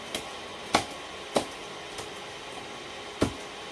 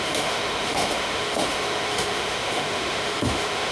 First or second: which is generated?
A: second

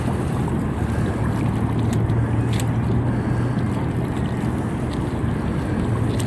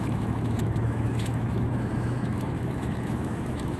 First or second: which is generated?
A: second